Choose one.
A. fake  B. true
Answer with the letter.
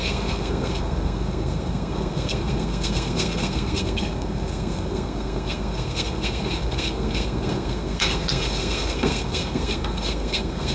A